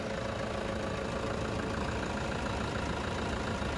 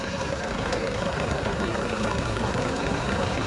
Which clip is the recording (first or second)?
first